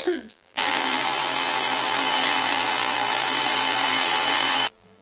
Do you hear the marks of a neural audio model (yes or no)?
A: yes